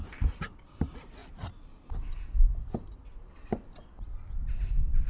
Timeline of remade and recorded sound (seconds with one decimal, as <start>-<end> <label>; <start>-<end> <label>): 0.0-5.1 recorded